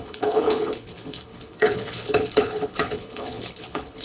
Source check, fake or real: fake